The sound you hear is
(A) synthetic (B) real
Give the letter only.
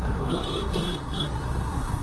A